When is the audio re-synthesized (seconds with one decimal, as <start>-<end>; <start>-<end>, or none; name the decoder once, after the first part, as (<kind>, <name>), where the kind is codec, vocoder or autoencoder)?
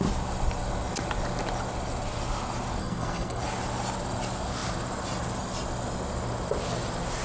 2.8-3.4 (codec, SNAC)